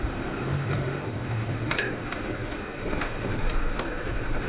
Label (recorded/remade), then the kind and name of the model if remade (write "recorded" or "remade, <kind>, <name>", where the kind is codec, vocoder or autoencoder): remade, autoencoder, DAC-VAE